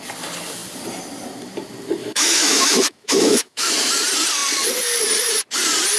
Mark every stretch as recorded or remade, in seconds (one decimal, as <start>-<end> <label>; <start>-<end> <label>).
0.0-2.0 recorded; 2.0-3.7 remade; 3.7-6.0 recorded